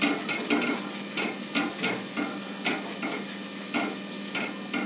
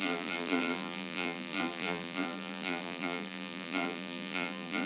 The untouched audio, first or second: first